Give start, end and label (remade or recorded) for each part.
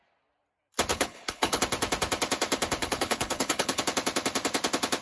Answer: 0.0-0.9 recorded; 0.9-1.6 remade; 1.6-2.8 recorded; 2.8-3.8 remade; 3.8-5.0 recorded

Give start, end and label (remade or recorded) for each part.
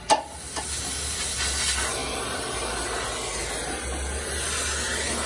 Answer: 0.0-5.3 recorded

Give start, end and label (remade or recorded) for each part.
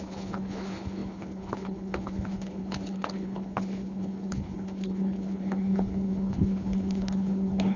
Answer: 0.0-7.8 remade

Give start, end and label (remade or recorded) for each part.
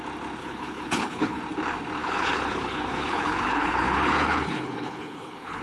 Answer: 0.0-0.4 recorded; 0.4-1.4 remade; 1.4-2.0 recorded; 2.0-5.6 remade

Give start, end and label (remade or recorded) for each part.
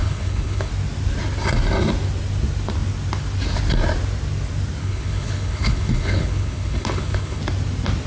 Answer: 0.0-0.7 remade; 0.7-4.8 recorded; 4.8-7.4 remade; 7.4-8.1 recorded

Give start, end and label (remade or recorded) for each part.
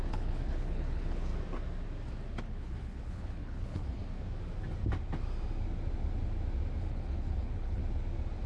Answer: 0.0-1.3 remade; 1.3-2.4 recorded; 2.4-4.0 remade; 4.0-6.8 recorded; 6.8-7.8 remade; 7.8-8.5 recorded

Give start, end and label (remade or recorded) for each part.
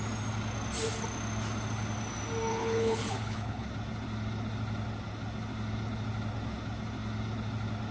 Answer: 0.0-2.5 recorded; 2.5-3.7 remade; 3.7-7.9 recorded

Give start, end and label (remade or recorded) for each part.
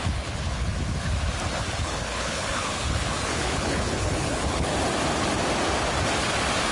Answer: 0.0-0.7 remade; 0.7-1.8 recorded; 1.8-4.7 remade; 4.7-6.7 recorded